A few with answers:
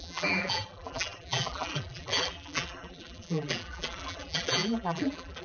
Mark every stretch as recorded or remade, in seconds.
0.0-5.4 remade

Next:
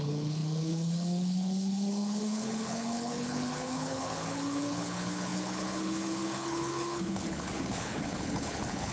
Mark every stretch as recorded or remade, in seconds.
0.0-8.9 remade

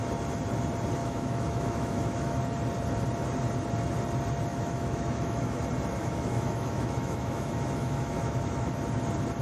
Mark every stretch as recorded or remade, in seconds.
0.0-1.0 recorded; 1.0-2.4 remade; 2.4-4.5 recorded; 4.5-5.6 remade; 5.6-6.0 recorded; 6.0-8.7 remade; 8.7-9.4 recorded

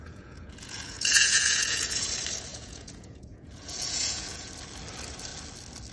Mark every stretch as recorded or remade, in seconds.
0.0-2.1 remade; 2.1-2.5 recorded; 2.5-4.5 remade; 4.5-5.9 recorded

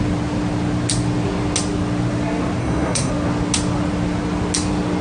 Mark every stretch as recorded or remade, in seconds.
0.0-2.6 recorded; 2.6-3.1 remade; 3.1-5.0 recorded

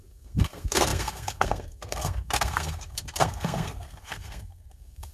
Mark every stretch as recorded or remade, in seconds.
0.0-5.1 remade

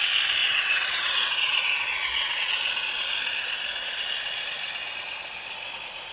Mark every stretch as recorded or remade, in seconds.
0.0-0.4 recorded; 0.4-2.5 remade; 2.5-6.1 recorded

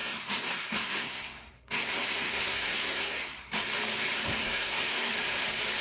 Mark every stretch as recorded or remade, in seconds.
0.0-3.5 remade; 3.5-4.4 recorded; 4.4-5.1 remade; 5.1-5.8 recorded